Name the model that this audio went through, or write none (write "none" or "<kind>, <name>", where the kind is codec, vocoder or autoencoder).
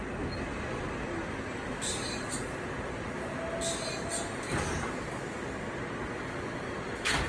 none